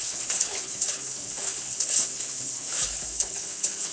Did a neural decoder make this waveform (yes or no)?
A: yes